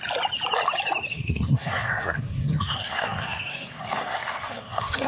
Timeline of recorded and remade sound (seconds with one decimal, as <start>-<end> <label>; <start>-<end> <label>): 0.0-1.1 recorded; 1.1-5.1 remade